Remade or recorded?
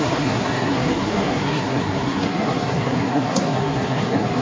remade